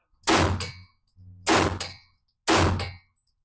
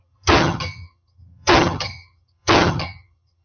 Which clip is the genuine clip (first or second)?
first